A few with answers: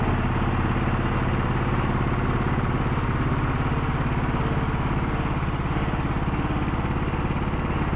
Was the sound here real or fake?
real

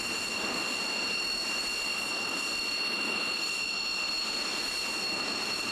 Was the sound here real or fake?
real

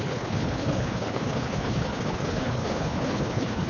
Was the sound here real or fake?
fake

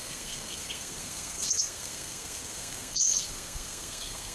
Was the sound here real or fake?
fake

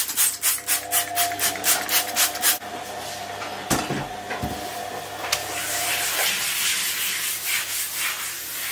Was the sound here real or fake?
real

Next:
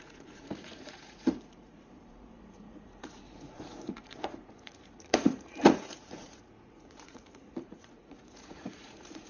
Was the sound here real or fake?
fake